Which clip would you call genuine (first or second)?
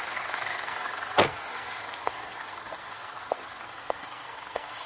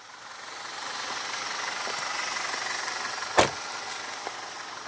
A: second